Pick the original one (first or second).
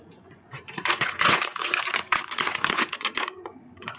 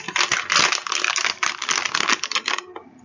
second